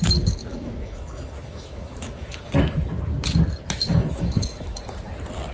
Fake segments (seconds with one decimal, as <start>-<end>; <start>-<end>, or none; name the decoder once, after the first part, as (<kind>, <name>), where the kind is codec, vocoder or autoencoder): 0.5-2.5 (autoencoder, DAC-VAE); 3.9-4.8